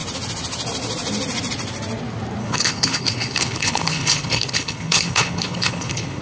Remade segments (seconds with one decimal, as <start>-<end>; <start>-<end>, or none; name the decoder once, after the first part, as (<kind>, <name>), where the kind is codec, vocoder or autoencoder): 2.4-6.2 (codec, HILCodec)